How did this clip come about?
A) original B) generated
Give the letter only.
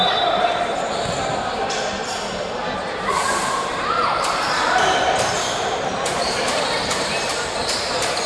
B